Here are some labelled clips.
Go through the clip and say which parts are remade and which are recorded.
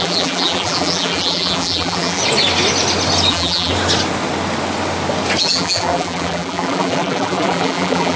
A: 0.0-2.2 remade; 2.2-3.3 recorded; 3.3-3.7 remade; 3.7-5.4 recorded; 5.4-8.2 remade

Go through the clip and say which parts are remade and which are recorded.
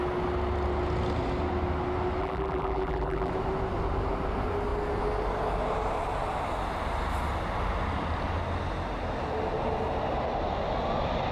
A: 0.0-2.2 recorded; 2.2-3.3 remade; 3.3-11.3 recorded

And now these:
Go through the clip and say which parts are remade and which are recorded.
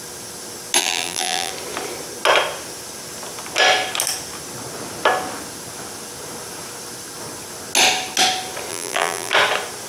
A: 0.0-0.8 recorded; 0.8-1.5 remade; 1.5-8.7 recorded; 8.7-9.3 remade; 9.3-9.9 recorded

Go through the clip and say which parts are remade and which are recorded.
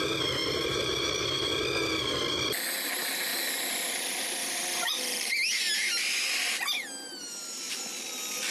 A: 0.0-0.4 recorded; 0.4-1.4 remade; 1.4-8.5 recorded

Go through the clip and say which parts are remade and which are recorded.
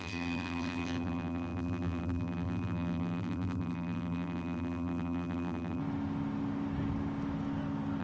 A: 0.0-5.8 remade; 5.8-8.0 recorded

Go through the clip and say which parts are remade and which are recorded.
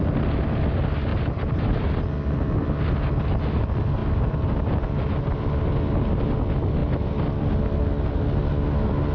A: 0.0-1.1 recorded; 1.1-1.9 remade; 1.9-9.1 recorded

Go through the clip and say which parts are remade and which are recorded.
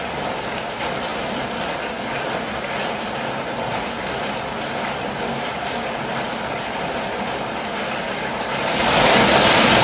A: 0.0-1.1 recorded; 1.1-1.6 remade; 1.6-9.8 recorded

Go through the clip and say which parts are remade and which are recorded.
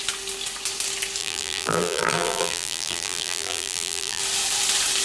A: 0.0-1.2 recorded; 1.2-4.2 remade; 4.2-5.0 recorded